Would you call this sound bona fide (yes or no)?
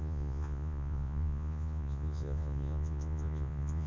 no